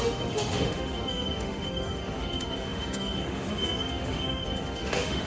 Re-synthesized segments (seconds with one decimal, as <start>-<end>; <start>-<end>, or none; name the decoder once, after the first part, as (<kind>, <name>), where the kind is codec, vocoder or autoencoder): 0.0-5.3 (autoencoder, DAC-VAE)